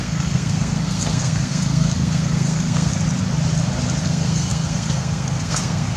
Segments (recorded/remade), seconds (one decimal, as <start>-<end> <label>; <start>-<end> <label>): 0.0-2.9 remade; 2.9-4.0 recorded; 4.0-6.0 remade